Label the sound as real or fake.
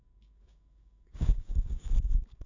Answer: fake